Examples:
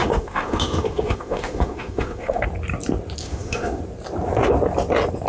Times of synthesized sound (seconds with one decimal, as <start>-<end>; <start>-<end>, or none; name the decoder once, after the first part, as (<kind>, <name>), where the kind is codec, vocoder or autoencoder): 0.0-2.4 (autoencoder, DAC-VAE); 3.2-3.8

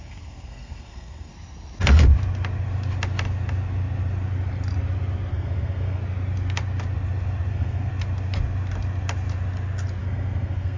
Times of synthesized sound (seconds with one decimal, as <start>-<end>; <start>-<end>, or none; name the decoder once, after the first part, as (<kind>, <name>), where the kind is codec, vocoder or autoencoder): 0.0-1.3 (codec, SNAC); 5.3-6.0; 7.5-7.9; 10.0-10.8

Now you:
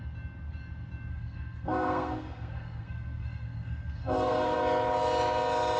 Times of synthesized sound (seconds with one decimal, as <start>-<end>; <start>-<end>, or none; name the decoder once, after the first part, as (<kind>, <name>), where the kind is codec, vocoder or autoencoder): 1.1-4.6 (codec, SNAC)

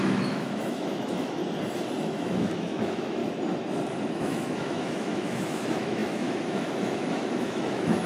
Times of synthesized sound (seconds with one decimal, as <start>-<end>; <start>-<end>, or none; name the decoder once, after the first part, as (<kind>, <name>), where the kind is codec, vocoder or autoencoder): 0.0-1.4 (autoencoder, DAC-VAE); 2.0-3.2; 4.1-8.1